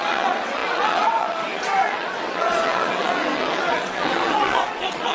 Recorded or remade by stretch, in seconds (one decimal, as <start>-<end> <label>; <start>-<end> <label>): 0.0-5.1 remade